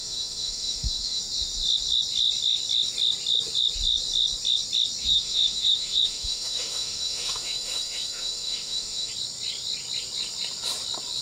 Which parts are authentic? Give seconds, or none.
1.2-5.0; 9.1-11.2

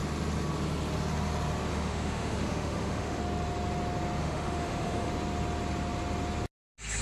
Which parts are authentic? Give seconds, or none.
0.0-1.7; 3.2-4.2; 5.1-7.0

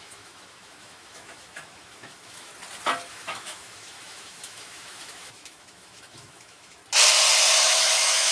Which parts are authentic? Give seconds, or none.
2.5-3.1; 6.8-7.5

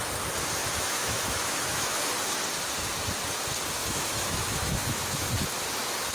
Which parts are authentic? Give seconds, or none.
0.0-0.6; 2.0-3.8; 5.3-6.1

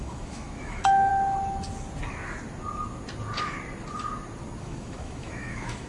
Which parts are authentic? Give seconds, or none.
1.1-4.6

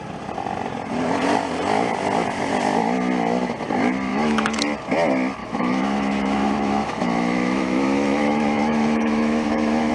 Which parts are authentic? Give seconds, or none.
0.0-4.1; 4.6-5.4

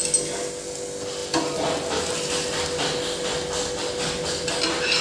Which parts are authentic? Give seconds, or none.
0.0-5.0

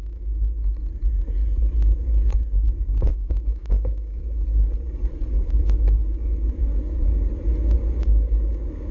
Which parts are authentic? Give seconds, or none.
0.0-3.1; 4.2-8.9